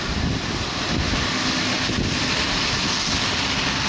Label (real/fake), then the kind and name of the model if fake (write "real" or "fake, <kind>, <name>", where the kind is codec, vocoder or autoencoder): real